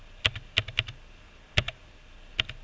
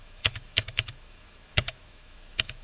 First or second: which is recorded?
first